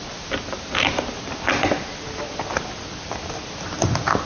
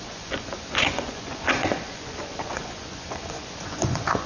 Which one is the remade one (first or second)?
second